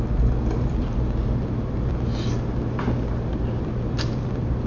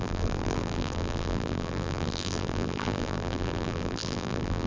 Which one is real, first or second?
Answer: first